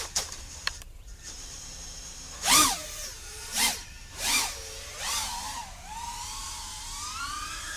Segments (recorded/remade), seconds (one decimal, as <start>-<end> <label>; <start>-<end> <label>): 0.0-7.8 remade